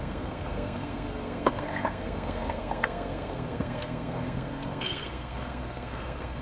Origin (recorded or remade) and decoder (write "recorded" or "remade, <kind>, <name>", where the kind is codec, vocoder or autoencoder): remade, codec, SNAC